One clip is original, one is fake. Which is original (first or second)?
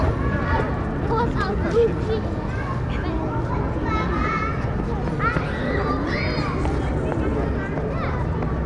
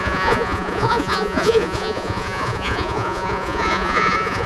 first